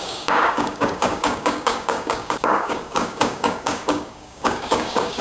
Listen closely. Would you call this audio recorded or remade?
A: remade